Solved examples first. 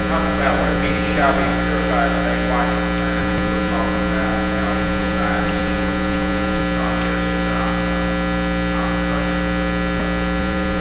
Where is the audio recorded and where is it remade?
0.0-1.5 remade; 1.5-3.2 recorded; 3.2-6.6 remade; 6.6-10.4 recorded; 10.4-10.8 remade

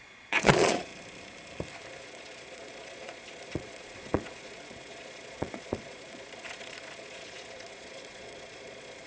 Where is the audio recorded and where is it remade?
0.0-0.9 remade; 0.9-2.0 recorded; 2.0-9.1 remade

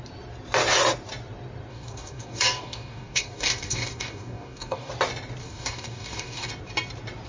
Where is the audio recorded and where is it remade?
0.0-1.7 recorded; 1.7-4.9 remade; 4.9-5.4 recorded; 5.4-6.5 remade; 6.5-7.3 recorded